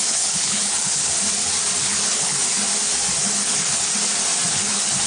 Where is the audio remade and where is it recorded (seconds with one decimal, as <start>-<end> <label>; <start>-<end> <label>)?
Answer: 0.0-1.1 remade; 1.1-1.8 recorded; 1.8-2.4 remade; 2.4-3.2 recorded; 3.2-3.9 remade; 3.9-4.5 recorded; 4.5-5.1 remade